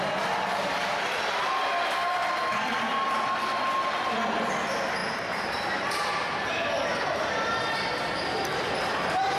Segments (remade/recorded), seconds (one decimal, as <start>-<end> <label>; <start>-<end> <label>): 0.0-9.4 recorded